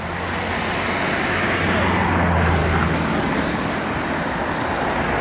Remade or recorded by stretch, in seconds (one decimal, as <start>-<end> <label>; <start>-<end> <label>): 0.0-2.6 recorded; 2.6-3.7 remade; 3.7-5.2 recorded